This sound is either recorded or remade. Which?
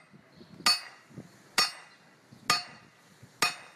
recorded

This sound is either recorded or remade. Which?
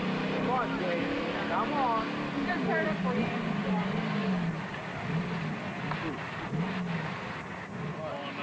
recorded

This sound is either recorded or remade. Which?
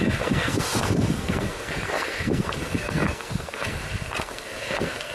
remade